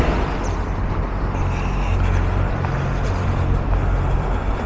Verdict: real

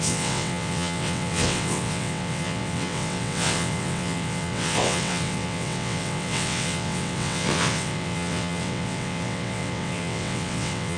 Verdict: fake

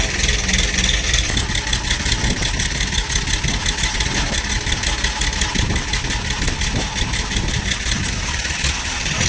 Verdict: real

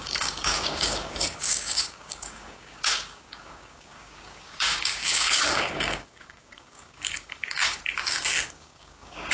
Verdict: fake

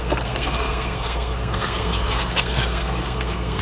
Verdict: fake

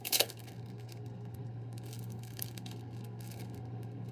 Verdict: fake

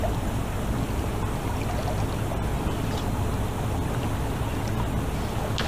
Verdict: real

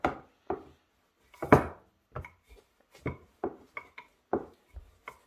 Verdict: real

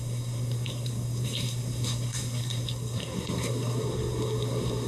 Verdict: fake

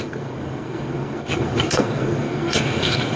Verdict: fake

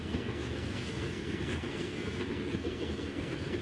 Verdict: fake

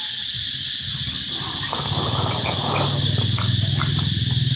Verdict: real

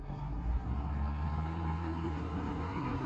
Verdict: fake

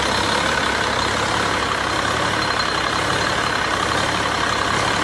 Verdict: real